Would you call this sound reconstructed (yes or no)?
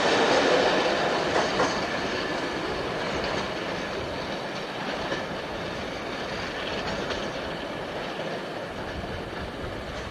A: no